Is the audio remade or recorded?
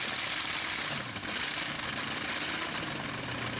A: recorded